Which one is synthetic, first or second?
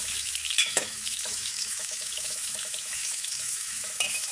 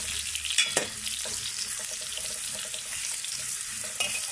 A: first